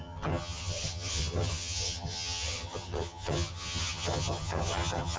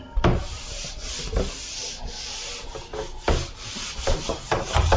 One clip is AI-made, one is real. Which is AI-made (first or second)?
first